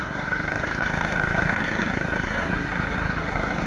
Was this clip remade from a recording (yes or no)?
yes